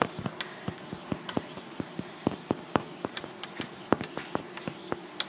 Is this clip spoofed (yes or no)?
no